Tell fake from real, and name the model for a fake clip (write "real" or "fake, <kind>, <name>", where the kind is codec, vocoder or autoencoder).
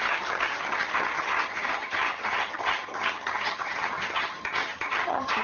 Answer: fake, vocoder, HiFi-GAN